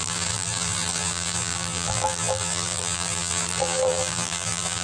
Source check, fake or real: fake